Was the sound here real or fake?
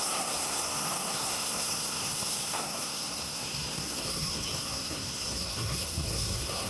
fake